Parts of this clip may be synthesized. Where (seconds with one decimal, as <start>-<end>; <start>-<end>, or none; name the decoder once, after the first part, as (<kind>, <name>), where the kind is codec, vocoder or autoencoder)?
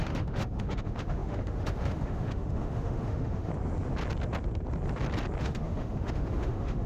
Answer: 0.0-3.5 (autoencoder, DAC-VAE); 5.4-6.9